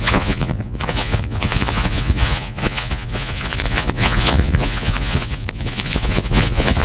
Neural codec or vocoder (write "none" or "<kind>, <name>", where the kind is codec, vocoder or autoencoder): vocoder, Vocos